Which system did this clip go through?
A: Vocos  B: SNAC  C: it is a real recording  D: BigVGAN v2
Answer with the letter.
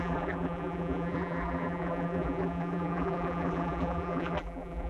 D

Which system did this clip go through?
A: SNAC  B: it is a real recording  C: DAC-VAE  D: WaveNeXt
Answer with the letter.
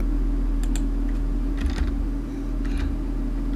B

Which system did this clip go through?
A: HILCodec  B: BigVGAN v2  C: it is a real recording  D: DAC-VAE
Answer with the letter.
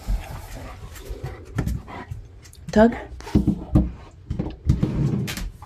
C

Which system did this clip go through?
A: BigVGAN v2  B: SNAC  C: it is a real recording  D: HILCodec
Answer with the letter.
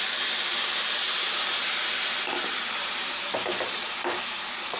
A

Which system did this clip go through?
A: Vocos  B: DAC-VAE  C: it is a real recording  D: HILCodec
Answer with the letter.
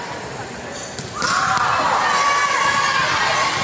C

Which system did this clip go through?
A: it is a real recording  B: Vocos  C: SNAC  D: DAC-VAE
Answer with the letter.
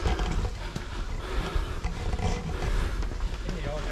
A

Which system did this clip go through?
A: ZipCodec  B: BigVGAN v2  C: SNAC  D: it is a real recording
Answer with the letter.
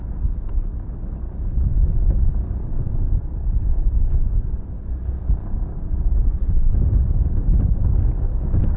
D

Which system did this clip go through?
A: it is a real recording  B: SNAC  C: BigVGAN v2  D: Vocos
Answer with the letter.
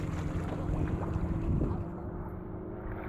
C